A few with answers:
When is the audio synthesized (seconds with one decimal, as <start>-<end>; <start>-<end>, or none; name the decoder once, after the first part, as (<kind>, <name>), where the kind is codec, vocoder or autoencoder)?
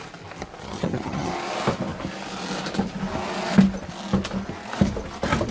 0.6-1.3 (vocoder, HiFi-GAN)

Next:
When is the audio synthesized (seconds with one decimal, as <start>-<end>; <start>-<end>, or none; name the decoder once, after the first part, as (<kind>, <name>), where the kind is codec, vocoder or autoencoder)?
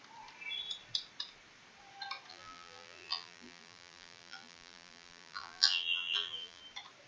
2.3-6.6 (vocoder, BigVGAN v2)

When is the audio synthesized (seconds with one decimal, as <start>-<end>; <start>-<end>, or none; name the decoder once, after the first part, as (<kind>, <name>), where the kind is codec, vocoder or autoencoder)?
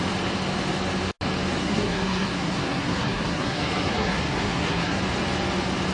1.6-5.0 (codec, SNAC)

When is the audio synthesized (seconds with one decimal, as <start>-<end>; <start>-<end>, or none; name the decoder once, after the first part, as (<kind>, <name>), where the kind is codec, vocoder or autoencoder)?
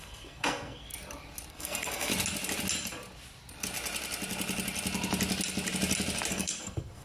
0.0-0.9 (codec, SNAC); 1.5-2.1; 6.3-7.0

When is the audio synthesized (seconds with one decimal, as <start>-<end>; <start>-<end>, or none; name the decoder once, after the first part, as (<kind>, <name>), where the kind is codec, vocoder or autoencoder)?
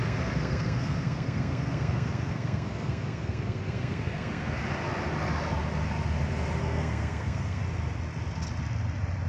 0.0-4.6 (codec, SNAC); 6.6-7.6